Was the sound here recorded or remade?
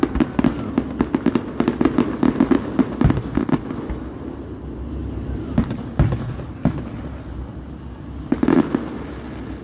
recorded